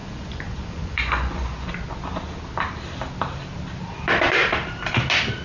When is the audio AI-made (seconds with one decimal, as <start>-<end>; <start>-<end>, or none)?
0.0-1.7